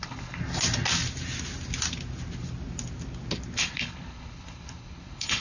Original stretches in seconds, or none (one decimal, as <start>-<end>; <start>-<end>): 0.4-3.6